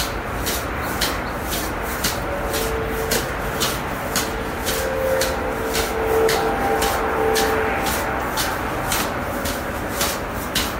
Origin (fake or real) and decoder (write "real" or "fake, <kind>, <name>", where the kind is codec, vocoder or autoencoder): real